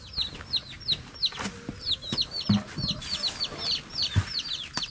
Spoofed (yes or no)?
no